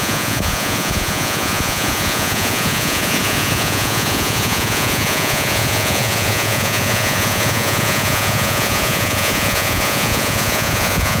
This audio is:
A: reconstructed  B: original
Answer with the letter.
A